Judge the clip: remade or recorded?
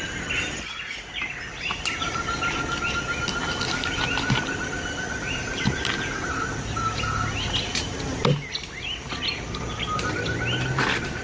recorded